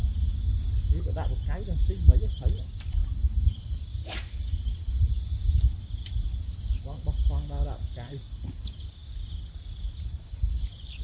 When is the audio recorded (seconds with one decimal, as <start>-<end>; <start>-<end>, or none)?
0.0-11.0